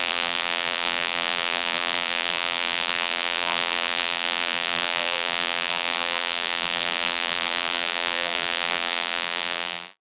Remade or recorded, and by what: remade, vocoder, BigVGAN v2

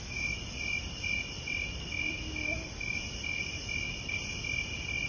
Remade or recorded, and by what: recorded